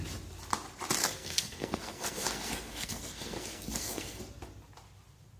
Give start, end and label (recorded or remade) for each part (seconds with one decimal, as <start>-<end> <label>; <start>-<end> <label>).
0.0-1.0 recorded; 1.0-4.2 remade; 4.2-5.4 recorded